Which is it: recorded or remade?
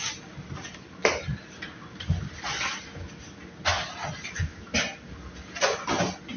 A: recorded